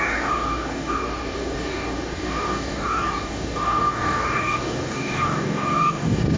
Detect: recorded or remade remade